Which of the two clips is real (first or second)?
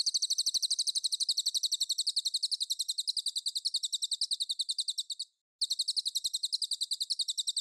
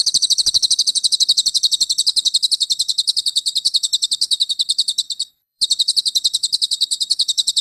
first